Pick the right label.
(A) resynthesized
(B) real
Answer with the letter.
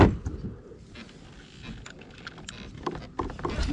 B